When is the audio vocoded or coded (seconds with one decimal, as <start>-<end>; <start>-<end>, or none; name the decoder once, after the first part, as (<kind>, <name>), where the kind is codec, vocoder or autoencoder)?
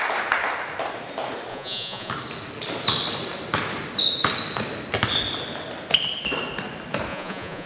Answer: 1.5-2.1 (vocoder, Vocos); 7.1-7.7